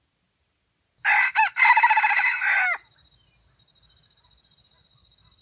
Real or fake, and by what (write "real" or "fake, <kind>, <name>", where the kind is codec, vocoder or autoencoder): real